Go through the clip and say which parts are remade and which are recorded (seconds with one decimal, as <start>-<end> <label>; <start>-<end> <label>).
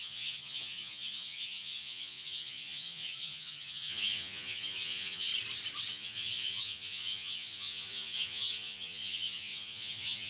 0.0-5.3 remade; 5.3-5.9 recorded; 5.9-10.3 remade